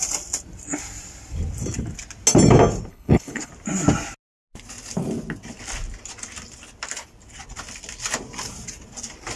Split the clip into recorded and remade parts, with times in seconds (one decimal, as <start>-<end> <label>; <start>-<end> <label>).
0.0-2.9 recorded; 2.9-3.5 remade; 3.5-9.4 recorded